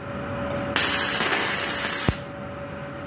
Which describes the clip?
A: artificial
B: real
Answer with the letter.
B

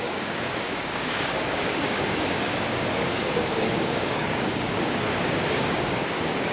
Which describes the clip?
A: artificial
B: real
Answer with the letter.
A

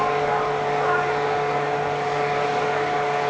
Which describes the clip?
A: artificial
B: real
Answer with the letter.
A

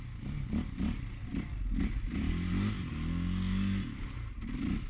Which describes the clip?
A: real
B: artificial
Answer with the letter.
A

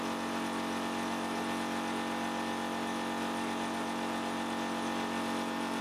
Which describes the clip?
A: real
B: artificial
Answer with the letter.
A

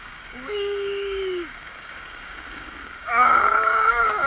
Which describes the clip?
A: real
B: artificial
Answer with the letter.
B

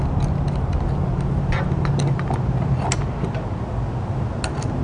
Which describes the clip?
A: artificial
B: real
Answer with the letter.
B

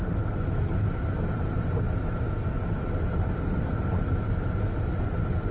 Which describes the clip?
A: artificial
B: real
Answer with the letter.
B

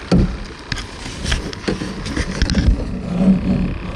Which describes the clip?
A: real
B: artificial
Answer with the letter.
A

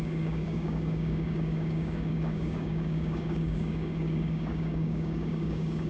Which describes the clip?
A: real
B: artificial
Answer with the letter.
B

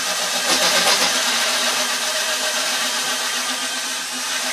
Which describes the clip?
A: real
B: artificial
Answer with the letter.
A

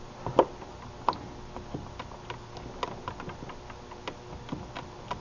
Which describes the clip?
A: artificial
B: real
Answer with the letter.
B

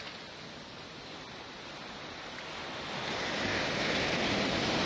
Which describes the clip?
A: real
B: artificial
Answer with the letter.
A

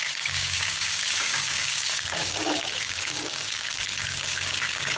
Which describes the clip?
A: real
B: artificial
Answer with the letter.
B